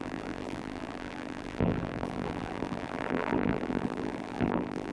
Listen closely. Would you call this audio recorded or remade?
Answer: remade